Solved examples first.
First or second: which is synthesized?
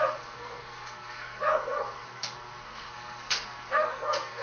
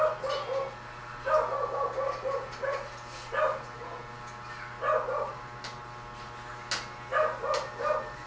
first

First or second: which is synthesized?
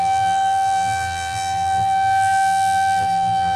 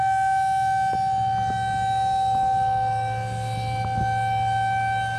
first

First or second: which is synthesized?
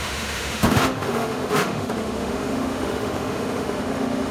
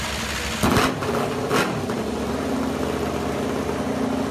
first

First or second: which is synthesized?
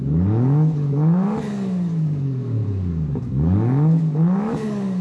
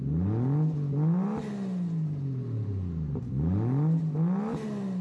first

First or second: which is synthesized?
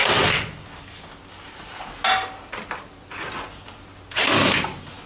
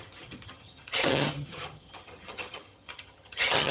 second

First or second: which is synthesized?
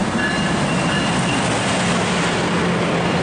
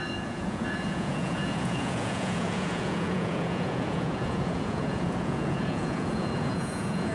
second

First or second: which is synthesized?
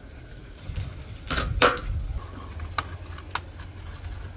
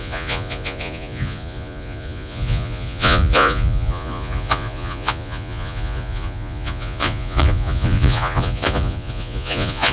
second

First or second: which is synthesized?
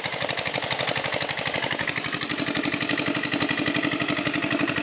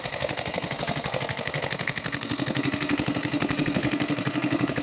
second